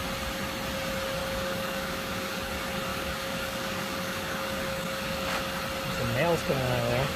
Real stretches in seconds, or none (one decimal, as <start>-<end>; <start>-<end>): 0.0-1.2; 2.5-2.9; 5.4-7.2